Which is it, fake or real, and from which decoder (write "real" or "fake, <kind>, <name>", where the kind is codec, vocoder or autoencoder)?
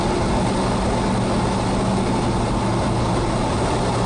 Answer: real